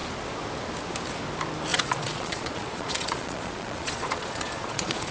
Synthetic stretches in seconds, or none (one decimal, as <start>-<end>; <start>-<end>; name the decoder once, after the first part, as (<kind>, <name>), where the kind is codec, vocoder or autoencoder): 1.7-5.1 (vocoder, Vocos)